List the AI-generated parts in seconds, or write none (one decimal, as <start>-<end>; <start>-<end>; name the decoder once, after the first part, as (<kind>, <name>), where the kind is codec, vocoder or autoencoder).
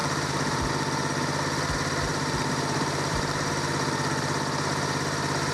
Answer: 0.0-0.7 (vocoder, BigVGAN v2); 2.1-3.5